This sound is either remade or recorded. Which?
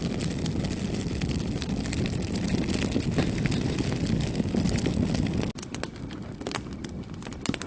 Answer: recorded